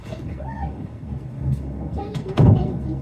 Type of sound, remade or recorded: remade